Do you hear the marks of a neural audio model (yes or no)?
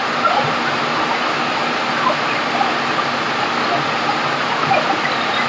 no